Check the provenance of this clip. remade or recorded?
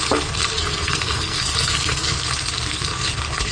remade